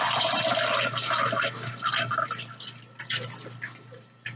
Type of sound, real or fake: real